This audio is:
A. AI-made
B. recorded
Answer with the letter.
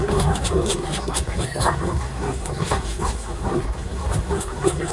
A